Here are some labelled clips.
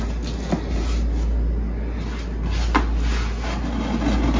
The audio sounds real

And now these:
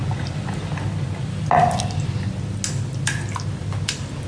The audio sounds real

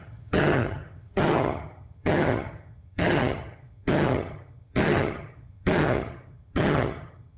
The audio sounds fake